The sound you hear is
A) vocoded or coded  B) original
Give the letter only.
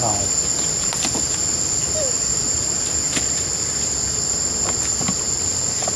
B